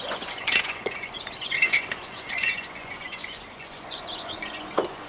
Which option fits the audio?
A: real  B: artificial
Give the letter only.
B